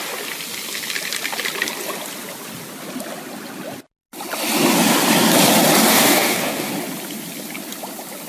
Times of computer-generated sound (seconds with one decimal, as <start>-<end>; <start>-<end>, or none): 5.9-6.7